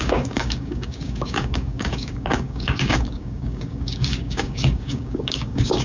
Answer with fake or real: fake